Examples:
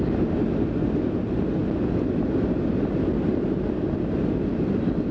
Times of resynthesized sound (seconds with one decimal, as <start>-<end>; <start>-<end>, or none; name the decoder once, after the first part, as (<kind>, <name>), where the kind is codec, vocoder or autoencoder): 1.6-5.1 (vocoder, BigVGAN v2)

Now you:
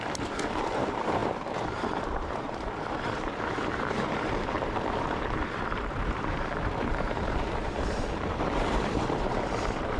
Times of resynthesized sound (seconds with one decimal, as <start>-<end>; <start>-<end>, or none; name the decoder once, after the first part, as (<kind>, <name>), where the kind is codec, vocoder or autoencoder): 0.0-10.0 (vocoder, BigVGAN v2)

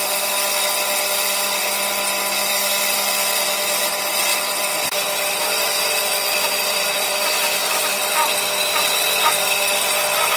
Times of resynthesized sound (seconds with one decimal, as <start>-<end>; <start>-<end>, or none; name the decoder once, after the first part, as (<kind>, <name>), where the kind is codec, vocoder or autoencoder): 4.3-9.3 (vocoder, BigVGAN v2)